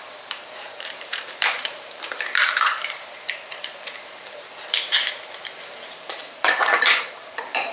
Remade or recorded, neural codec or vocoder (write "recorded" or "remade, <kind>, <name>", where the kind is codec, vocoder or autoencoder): remade, vocoder, BigVGAN v2